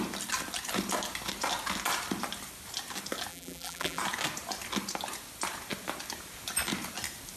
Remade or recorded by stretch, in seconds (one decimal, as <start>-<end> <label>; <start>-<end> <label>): 0.0-3.3 recorded; 3.3-4.0 remade; 4.0-7.4 recorded